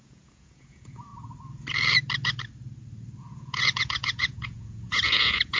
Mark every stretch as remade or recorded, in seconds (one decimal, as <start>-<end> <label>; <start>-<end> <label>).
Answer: 0.0-1.1 remade; 1.1-3.2 recorded; 3.2-5.6 remade